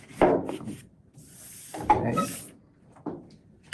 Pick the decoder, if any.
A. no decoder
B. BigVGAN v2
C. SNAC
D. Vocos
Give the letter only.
A